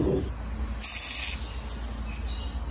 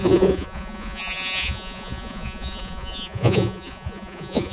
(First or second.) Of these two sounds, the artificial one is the second